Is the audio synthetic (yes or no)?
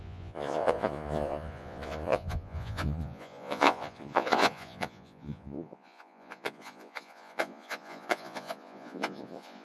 yes